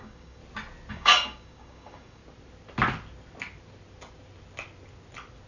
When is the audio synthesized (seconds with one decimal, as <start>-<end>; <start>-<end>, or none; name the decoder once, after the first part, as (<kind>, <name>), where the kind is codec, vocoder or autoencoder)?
0.0-0.4 (codec, DAC); 0.9-2.2